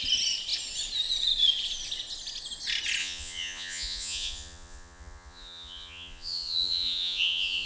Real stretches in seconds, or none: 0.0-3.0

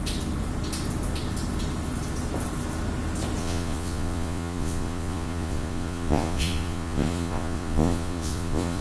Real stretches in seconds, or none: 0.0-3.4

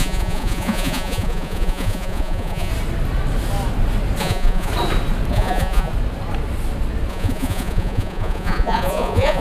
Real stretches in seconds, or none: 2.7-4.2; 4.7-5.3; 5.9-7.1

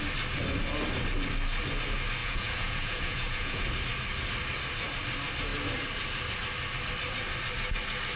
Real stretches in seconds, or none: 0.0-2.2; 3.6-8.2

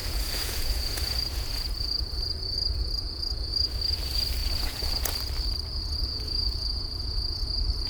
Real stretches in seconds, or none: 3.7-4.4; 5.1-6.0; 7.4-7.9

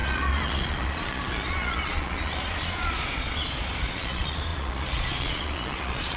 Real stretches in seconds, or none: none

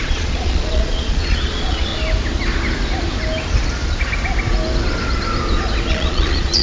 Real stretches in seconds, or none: 1.9-5.9

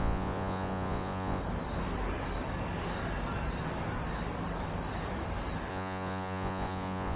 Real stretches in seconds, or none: 1.4-5.7